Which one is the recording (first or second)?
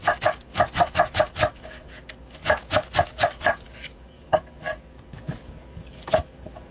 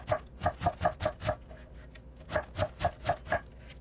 second